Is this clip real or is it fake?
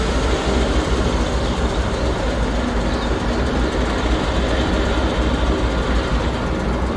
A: real